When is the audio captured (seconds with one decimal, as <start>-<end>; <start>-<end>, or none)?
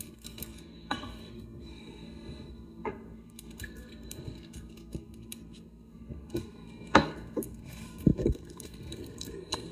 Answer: none